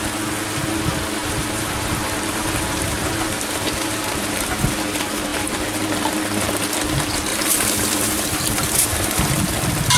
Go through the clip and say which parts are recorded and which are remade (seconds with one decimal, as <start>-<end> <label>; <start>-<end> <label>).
0.0-1.2 recorded; 1.2-4.5 remade; 4.5-7.3 recorded; 7.3-9.4 remade; 9.4-10.0 recorded